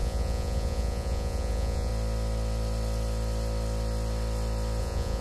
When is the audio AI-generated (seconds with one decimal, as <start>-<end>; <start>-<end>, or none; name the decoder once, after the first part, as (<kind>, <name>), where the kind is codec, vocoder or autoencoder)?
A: 0.0-1.9 (vocoder, Vocos); 4.8-5.2